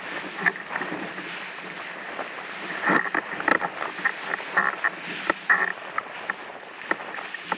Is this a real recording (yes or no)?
yes